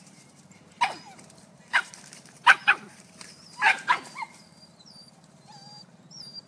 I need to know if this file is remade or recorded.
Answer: remade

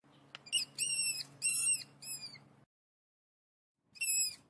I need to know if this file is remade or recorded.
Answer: recorded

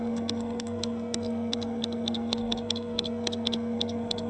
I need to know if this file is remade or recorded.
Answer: remade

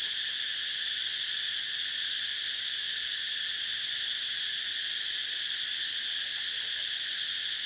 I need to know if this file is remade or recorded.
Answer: recorded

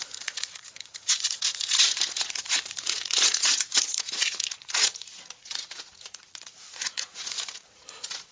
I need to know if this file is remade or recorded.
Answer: remade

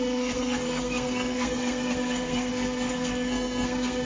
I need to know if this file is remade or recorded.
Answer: remade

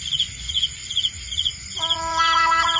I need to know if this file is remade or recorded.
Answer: remade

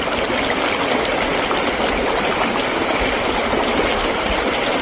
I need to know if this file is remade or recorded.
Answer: recorded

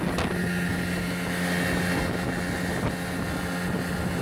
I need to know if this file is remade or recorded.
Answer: recorded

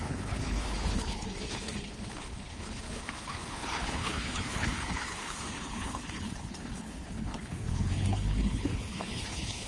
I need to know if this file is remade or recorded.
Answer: remade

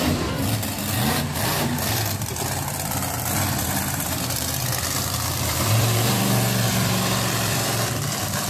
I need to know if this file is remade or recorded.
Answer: remade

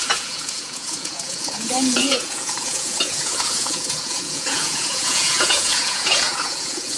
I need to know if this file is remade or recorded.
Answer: remade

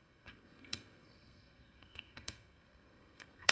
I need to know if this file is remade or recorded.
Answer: remade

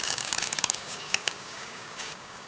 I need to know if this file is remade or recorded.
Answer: remade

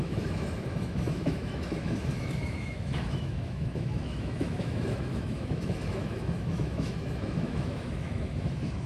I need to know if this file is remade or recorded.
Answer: remade